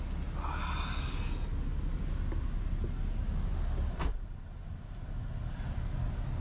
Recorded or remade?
recorded